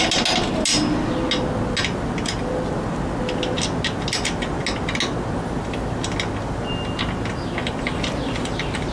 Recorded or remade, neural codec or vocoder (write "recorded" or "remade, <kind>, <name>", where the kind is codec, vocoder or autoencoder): recorded